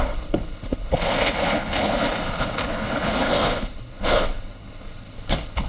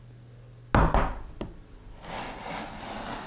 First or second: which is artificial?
first